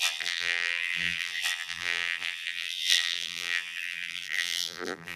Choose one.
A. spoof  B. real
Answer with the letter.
A